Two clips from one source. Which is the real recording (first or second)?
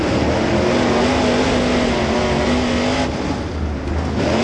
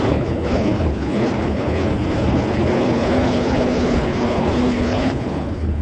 first